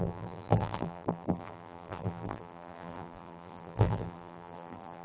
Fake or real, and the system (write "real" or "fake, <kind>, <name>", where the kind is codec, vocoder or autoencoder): fake, vocoder, BigVGAN v2